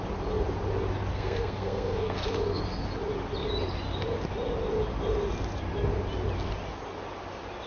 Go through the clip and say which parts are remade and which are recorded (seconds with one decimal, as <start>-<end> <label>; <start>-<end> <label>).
0.0-1.1 recorded; 1.1-2.6 remade; 2.6-7.7 recorded